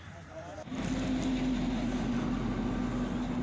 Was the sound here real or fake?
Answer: real